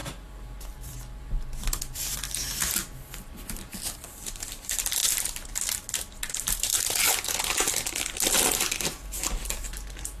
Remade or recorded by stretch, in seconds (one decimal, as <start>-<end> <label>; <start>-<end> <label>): 0.0-5.0 remade; 5.0-6.3 recorded; 6.3-6.7 remade; 6.7-8.4 recorded; 8.4-10.2 remade